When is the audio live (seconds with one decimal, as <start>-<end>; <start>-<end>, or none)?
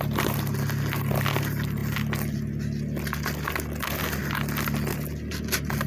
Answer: 0.0-5.9